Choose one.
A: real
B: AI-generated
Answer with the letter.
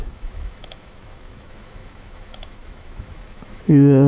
B